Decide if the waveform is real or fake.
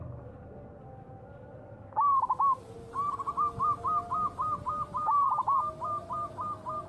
real